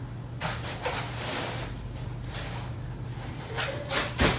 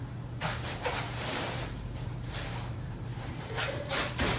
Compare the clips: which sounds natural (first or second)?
first